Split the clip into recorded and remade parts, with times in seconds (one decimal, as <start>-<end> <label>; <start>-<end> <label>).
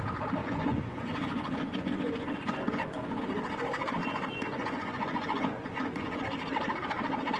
0.0-0.4 recorded; 0.4-3.2 remade; 3.2-4.5 recorded; 4.5-6.2 remade; 6.2-7.4 recorded